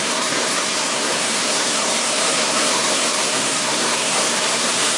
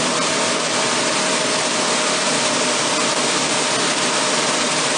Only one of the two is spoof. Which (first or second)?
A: first